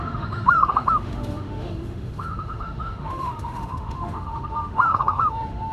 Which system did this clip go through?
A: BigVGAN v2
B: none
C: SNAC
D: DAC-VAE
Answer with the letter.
D